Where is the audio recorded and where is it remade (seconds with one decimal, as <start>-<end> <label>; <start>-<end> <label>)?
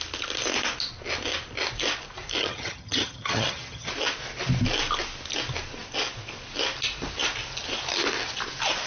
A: 0.0-2.4 recorded; 2.4-3.9 remade; 3.9-8.9 recorded